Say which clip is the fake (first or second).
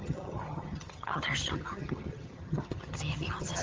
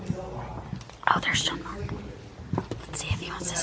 first